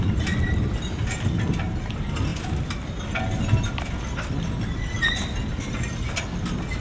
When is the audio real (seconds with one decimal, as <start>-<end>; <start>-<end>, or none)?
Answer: 0.0-6.8